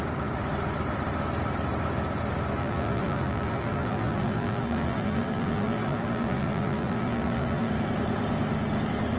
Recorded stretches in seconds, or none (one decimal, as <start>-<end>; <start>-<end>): 0.0-2.6; 7.7-9.2